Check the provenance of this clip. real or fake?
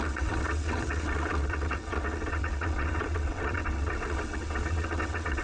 fake